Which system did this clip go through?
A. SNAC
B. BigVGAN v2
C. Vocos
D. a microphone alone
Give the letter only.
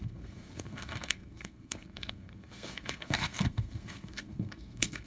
A